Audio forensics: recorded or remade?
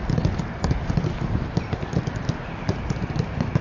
recorded